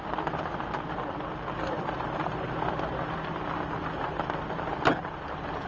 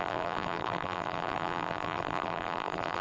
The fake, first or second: second